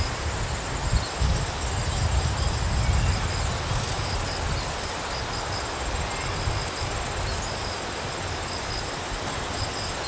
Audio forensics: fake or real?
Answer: real